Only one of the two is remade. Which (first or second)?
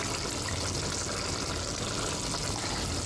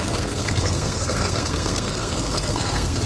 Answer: second